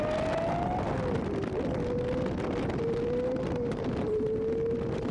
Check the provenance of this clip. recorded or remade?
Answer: recorded